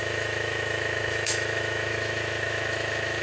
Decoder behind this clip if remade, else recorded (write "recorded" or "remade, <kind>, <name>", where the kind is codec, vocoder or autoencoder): remade, autoencoder, DAC-VAE